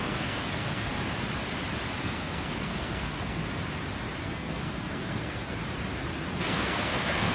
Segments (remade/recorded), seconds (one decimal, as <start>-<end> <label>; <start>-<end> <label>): 0.0-0.9 remade; 0.9-2.0 recorded; 2.0-3.4 remade; 3.4-4.2 recorded; 4.2-5.6 remade; 5.6-6.4 recorded; 6.4-7.3 remade